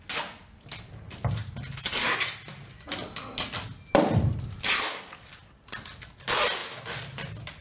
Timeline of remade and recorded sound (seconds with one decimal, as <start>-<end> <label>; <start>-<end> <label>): 0.0-7.6 recorded

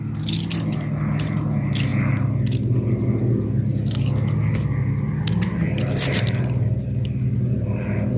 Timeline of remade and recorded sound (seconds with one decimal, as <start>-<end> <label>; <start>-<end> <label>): 0.0-8.2 recorded

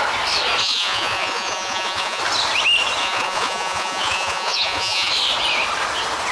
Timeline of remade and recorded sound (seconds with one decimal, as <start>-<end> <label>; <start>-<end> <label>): 0.0-0.6 recorded; 0.6-2.2 remade; 2.2-3.0 recorded; 3.0-5.1 remade; 5.1-6.3 recorded

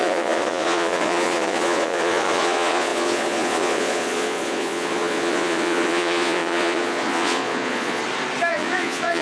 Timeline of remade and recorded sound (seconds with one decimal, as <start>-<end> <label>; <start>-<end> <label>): 0.0-8.0 remade; 8.0-8.5 recorded; 8.5-9.2 remade

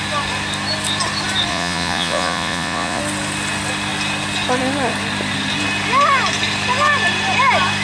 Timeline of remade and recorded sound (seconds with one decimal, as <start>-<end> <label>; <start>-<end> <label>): 0.0-1.5 recorded; 1.5-3.0 remade; 3.0-7.8 recorded

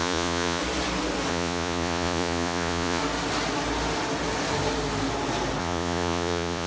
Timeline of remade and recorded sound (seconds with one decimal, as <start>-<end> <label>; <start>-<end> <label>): 0.0-0.6 remade; 0.6-1.3 recorded; 1.3-3.0 remade; 3.0-5.6 recorded; 5.6-6.7 remade

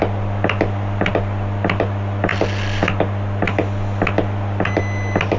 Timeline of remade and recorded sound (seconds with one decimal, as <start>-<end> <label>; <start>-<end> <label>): 0.0-5.4 recorded

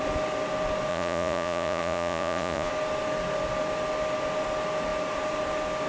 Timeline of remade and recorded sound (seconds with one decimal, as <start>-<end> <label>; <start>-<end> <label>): 0.0-0.9 recorded; 0.9-2.7 remade; 2.7-5.9 recorded